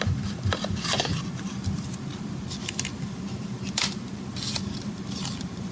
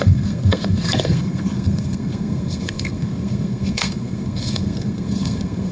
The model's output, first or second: second